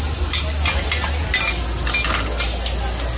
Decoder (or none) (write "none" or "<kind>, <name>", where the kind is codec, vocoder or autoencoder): none